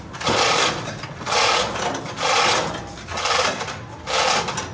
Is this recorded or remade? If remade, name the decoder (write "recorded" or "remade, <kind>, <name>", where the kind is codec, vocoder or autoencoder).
recorded